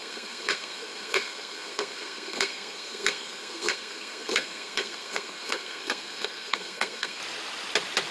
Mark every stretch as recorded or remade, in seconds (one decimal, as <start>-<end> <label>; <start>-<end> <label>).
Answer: 0.0-7.2 remade; 7.2-8.1 recorded